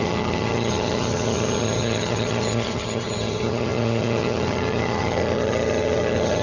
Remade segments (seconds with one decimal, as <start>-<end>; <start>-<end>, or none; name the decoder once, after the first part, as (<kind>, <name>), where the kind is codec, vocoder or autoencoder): 0.0-6.4 (vocoder, HiFi-GAN)